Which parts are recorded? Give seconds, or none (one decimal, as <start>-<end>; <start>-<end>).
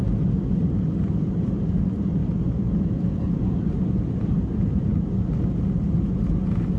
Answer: 0.0-6.8